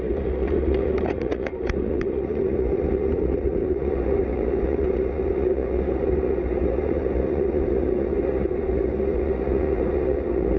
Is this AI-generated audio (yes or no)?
yes